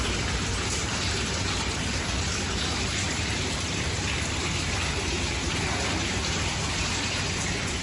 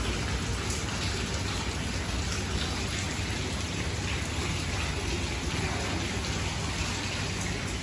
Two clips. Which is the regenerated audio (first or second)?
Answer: first